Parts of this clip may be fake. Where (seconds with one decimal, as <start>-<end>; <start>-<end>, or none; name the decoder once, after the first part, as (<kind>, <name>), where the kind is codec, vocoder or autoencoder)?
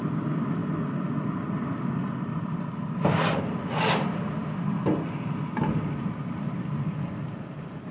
none